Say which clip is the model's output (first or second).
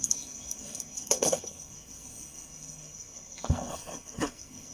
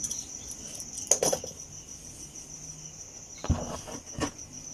first